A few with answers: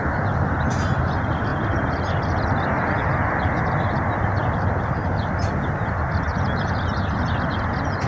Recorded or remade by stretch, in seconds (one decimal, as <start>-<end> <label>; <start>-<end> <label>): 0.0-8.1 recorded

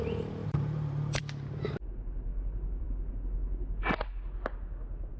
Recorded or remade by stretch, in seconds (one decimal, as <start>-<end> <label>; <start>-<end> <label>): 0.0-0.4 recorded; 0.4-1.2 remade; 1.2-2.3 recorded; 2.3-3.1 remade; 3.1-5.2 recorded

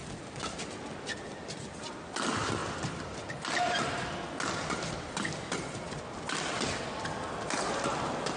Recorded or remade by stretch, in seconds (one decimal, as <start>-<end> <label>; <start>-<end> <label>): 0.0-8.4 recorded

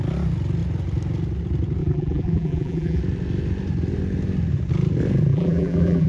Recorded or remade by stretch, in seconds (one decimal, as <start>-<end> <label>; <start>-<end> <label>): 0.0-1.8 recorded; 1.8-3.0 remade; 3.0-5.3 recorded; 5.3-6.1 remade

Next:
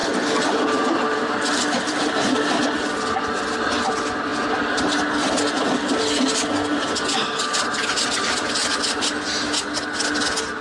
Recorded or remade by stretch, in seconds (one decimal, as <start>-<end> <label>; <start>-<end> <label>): 0.0-2.0 remade; 2.0-10.6 recorded

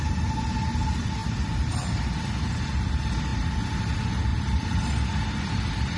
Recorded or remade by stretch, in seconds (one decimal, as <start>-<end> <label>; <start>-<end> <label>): 0.0-1.2 recorded; 1.2-2.1 remade; 2.1-4.3 recorded; 4.3-6.0 remade

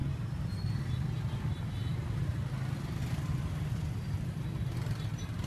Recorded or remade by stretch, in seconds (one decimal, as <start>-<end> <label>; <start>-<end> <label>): 0.0-5.5 recorded

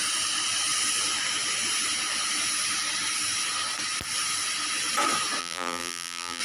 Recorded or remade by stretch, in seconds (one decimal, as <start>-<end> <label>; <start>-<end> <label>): 0.0-5.4 recorded; 5.4-6.4 remade